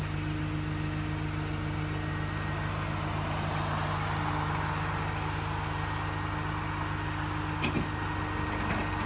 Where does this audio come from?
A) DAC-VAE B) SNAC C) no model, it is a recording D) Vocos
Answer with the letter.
C